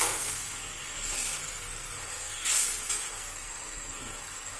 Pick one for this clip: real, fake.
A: fake